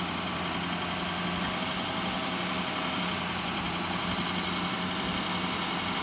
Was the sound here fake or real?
real